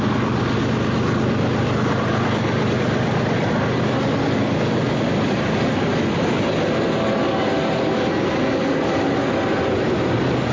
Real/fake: real